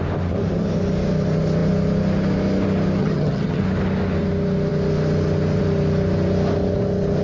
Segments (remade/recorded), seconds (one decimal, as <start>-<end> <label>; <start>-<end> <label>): 0.0-3.0 recorded; 3.0-3.6 remade; 3.6-7.2 recorded